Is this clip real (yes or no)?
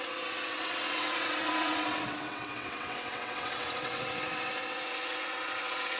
no